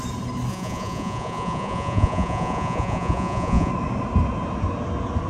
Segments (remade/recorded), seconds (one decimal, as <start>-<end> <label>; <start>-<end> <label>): 0.0-0.5 recorded; 0.5-3.7 remade; 3.7-5.3 recorded